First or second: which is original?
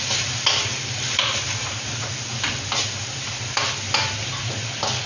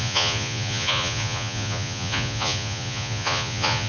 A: first